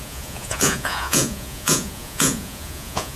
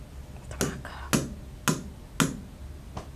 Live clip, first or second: second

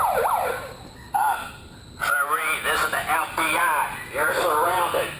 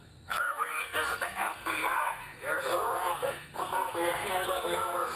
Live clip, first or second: first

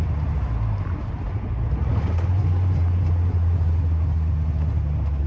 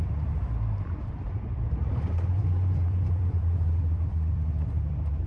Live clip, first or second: first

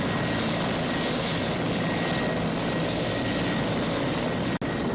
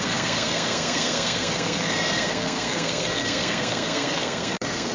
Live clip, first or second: first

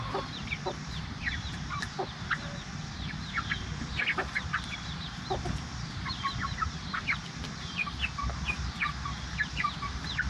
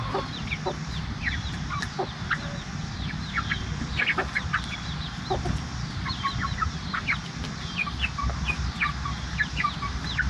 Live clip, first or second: second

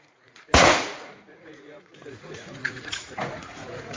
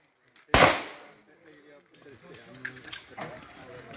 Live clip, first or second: second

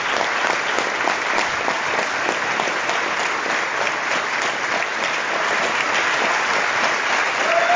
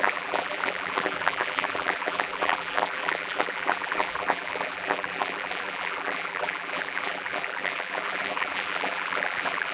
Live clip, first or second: first